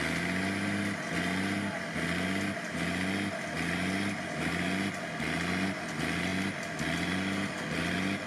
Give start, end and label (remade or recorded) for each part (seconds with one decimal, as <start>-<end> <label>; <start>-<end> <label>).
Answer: 0.0-8.3 recorded